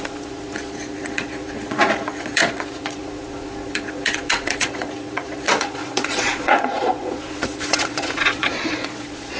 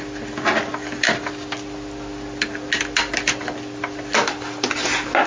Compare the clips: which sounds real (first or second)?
second